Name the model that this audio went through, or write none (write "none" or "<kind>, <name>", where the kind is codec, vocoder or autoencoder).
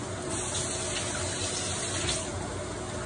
none